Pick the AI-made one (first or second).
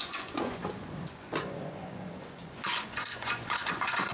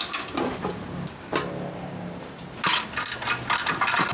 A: first